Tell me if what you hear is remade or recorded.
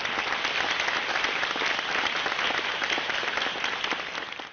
recorded